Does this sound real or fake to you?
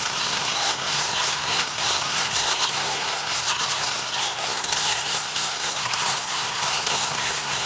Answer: fake